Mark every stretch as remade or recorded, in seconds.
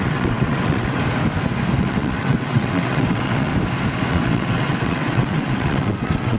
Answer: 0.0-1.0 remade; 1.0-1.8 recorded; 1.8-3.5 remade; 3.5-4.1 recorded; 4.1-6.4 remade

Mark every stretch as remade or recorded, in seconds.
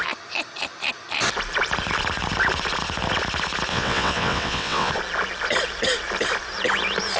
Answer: 0.0-3.7 recorded; 3.7-4.9 remade; 4.9-7.2 recorded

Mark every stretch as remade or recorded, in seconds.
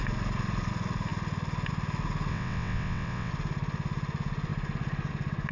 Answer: 0.0-2.3 recorded; 2.3-3.3 remade; 3.3-5.5 recorded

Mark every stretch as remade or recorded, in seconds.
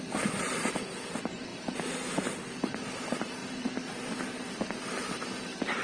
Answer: 0.0-5.8 recorded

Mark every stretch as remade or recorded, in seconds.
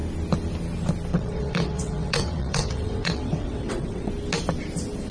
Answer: 0.0-1.1 recorded; 1.1-4.1 remade; 4.1-5.1 recorded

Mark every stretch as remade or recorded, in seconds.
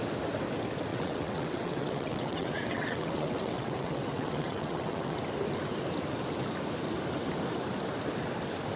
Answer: 0.0-0.9 recorded; 0.9-5.2 remade; 5.2-8.8 recorded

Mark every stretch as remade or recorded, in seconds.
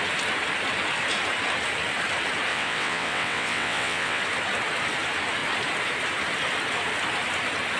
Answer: 0.0-2.5 recorded; 2.5-4.2 remade; 4.2-7.8 recorded